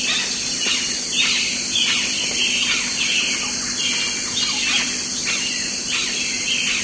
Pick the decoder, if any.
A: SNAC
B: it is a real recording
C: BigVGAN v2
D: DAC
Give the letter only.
B